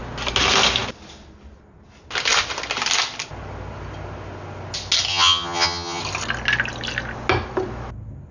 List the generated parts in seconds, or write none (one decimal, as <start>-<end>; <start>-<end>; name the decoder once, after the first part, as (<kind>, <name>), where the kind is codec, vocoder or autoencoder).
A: 5.1-6.0 (vocoder, HiFi-GAN)